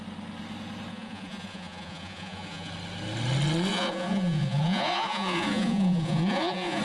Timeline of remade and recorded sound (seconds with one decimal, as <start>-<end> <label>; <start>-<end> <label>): 0.0-0.9 recorded; 0.9-2.7 remade; 2.7-3.7 recorded; 3.7-6.8 remade